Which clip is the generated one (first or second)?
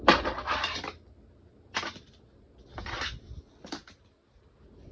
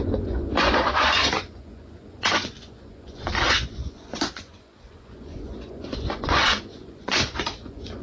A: second